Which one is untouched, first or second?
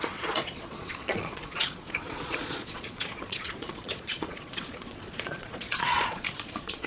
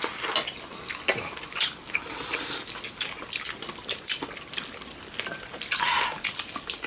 second